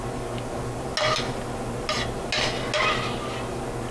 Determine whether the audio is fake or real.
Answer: real